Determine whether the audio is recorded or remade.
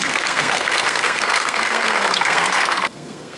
remade